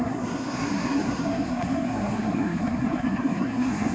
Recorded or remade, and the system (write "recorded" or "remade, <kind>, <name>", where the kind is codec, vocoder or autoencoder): remade, codec, SNAC